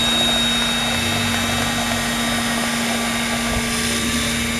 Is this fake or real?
real